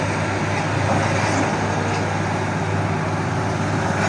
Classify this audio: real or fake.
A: real